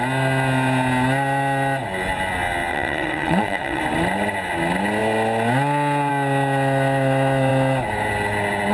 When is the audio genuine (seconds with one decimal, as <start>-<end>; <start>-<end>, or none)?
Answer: 0.0-2.7; 3.8-8.7